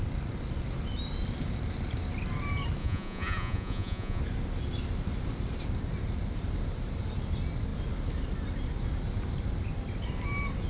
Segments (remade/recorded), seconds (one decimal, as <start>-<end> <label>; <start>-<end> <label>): 0.0-2.8 recorded; 2.8-4.2 remade; 4.2-10.7 recorded